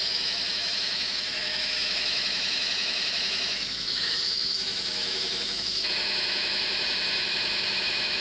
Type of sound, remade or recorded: remade